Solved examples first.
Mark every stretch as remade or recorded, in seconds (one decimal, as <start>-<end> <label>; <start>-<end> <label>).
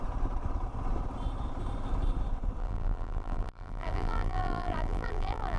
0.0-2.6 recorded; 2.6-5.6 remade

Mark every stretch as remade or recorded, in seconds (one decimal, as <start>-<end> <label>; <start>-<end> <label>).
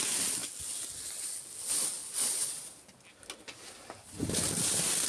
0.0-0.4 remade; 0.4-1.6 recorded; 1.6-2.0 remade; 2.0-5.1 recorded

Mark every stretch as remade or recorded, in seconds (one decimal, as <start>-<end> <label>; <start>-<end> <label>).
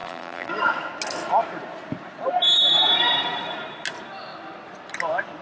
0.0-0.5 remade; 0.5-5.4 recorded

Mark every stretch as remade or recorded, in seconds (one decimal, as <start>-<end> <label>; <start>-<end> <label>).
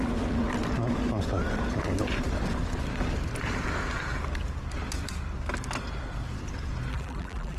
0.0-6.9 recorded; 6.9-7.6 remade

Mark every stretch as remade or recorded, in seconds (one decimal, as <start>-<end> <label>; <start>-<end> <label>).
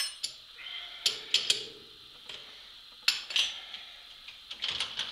0.0-5.1 recorded